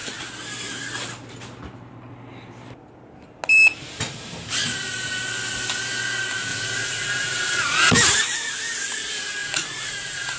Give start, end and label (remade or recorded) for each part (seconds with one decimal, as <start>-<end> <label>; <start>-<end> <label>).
0.0-6.5 recorded; 6.5-7.9 remade; 7.9-9.4 recorded; 9.4-10.4 remade